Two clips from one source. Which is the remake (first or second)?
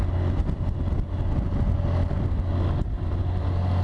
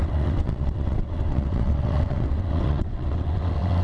second